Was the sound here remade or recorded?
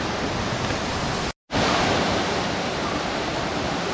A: recorded